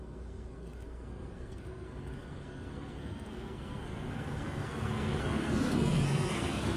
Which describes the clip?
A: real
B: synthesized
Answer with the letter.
B